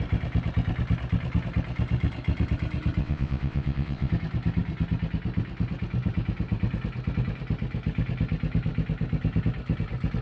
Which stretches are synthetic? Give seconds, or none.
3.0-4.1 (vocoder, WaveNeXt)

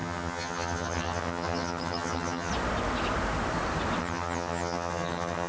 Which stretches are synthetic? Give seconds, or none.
0.0-2.5 (vocoder, HiFi-GAN); 4.0-5.5

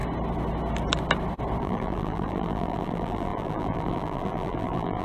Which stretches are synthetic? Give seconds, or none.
1.6-5.0 (vocoder, BigVGAN v2)

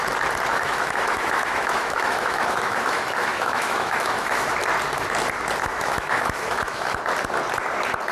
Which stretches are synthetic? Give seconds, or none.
0.5-4.5 (autoencoder, DAC-VAE); 5.6-7.0